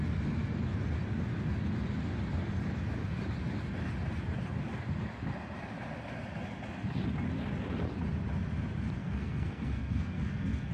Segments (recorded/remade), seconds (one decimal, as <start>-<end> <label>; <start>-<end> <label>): 0.0-9.0 recorded; 9.0-10.7 remade